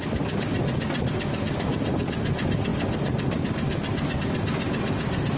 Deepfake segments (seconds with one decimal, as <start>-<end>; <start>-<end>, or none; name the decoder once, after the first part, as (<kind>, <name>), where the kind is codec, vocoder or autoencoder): 2.7-4.2 (vocoder, BigVGAN v2)